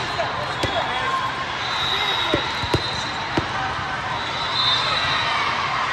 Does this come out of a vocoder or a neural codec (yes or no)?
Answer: no